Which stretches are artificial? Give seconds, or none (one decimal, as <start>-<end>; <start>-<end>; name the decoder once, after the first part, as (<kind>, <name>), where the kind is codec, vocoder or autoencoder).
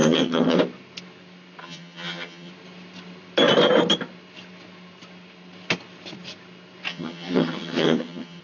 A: 0.0-0.6 (vocoder, HiFi-GAN); 1.6-2.5; 6.9-8.4